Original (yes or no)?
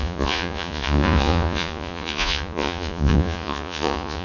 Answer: no